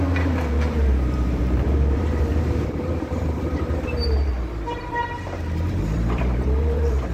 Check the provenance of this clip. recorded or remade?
remade